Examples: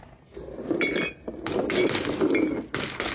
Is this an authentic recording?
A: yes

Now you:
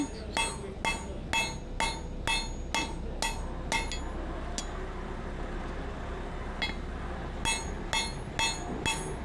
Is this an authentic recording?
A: yes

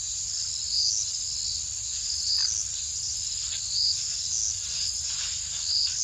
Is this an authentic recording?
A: yes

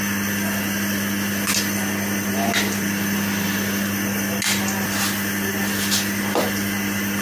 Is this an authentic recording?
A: yes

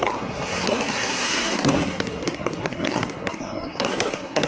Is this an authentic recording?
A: no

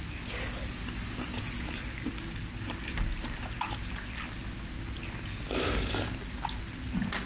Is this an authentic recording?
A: yes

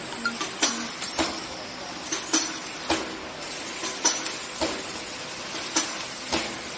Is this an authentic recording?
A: yes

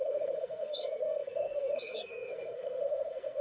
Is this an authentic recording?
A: no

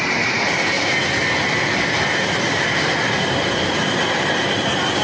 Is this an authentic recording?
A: yes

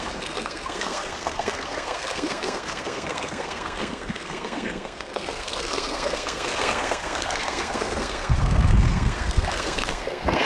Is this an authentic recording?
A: no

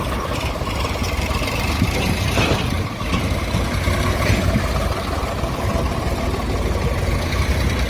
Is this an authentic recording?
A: yes